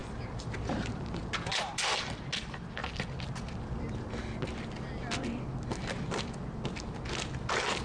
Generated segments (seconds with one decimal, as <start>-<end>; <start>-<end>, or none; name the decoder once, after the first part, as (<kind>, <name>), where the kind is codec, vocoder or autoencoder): 0.0-0.9 (vocoder, BigVGAN v2)